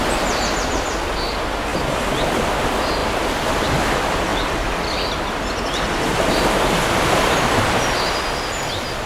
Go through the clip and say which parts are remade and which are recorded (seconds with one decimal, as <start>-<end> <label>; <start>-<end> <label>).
0.0-9.1 recorded